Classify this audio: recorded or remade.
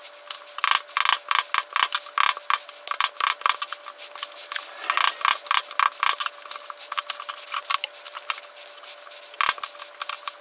recorded